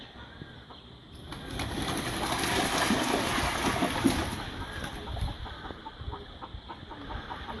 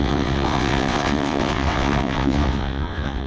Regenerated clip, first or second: second